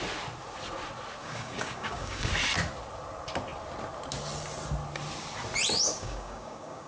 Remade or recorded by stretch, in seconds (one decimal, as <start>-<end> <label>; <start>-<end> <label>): 0.0-1.2 recorded; 1.2-2.3 remade; 2.3-5.9 recorded; 5.9-6.9 remade